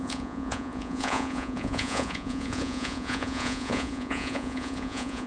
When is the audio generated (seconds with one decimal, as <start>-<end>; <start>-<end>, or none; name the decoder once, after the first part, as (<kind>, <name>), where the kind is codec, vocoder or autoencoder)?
0.0-5.3 (vocoder, Vocos)